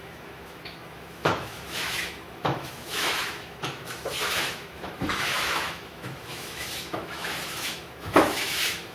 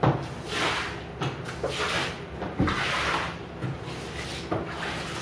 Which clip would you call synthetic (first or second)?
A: first